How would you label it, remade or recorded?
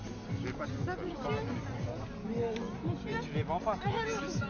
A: recorded